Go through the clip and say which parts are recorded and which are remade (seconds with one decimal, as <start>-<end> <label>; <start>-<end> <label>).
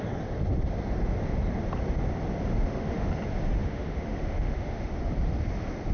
0.0-2.5 recorded; 2.5-3.1 remade; 3.1-3.6 recorded; 3.6-5.0 remade; 5.0-5.9 recorded